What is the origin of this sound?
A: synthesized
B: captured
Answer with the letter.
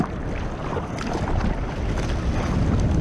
B